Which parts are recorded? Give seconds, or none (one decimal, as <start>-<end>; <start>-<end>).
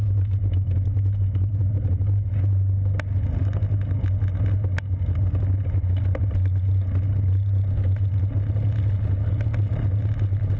0.0-10.6